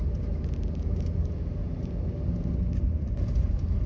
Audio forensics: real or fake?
real